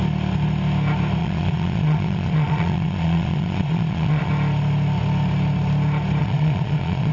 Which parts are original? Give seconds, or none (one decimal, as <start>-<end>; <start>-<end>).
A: 0.0-1.2; 4.3-6.2